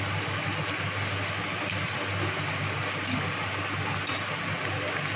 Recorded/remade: recorded